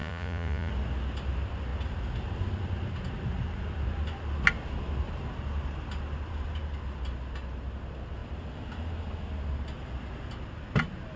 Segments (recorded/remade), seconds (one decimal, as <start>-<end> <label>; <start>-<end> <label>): 0.0-0.7 remade; 0.7-11.2 recorded